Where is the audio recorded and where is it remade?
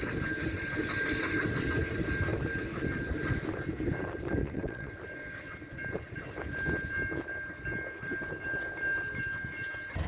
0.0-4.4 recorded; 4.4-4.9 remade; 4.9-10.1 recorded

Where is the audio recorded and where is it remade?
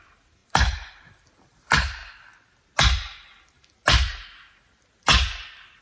0.0-2.0 remade; 2.0-5.8 recorded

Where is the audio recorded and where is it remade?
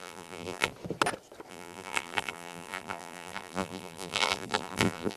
0.0-0.7 remade; 0.7-1.5 recorded; 1.5-5.2 remade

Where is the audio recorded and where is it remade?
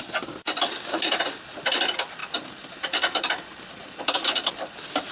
0.0-5.1 recorded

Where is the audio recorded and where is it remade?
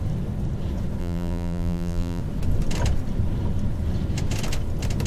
0.0-1.0 recorded; 1.0-2.2 remade; 2.2-5.1 recorded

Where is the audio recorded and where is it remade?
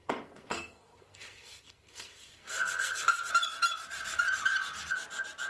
0.0-3.3 remade; 3.3-5.5 recorded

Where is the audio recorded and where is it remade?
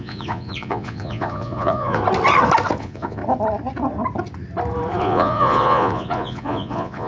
0.0-2.0 remade; 2.0-2.8 recorded; 2.8-3.2 remade; 3.2-5.0 recorded; 5.0-7.1 remade